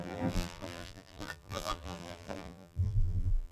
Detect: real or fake fake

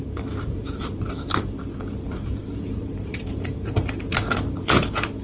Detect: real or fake fake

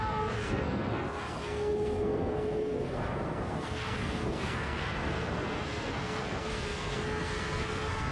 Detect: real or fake fake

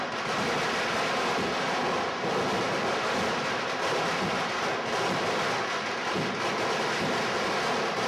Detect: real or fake real